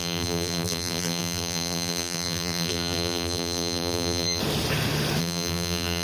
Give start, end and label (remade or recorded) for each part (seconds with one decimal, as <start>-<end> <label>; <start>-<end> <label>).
0.0-4.4 remade; 4.4-5.2 recorded; 5.2-6.0 remade